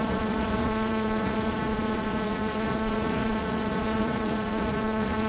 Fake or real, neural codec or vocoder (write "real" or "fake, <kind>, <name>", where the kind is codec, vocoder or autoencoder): fake, vocoder, Vocos